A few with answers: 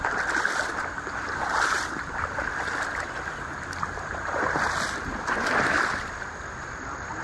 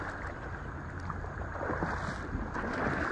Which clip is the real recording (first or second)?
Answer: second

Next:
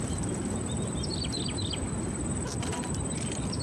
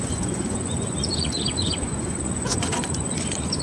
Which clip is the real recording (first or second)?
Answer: first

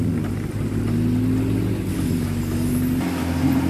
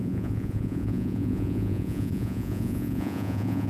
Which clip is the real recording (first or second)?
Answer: first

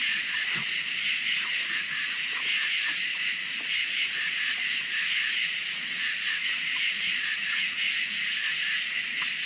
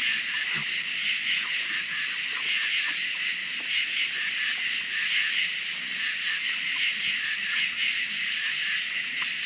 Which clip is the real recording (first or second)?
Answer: second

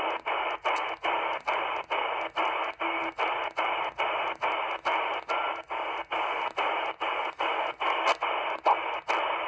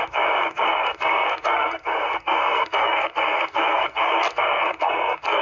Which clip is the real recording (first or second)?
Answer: first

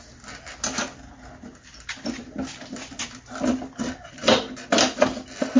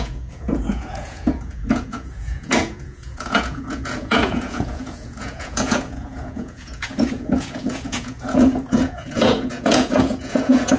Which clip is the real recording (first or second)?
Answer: first